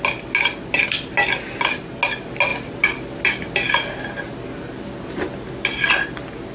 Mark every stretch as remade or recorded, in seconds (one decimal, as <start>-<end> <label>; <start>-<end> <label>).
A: 0.0-6.5 recorded